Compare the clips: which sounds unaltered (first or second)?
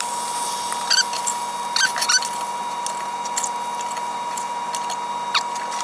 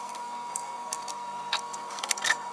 first